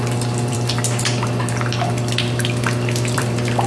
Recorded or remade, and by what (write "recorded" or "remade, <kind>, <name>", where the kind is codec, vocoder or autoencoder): remade, vocoder, BigVGAN v2